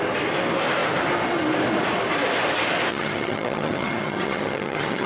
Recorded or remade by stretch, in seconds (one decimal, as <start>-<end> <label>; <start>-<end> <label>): 0.0-2.9 recorded; 2.9-5.1 remade